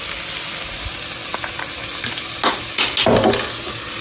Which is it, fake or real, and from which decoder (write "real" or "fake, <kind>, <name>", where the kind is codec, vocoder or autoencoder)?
real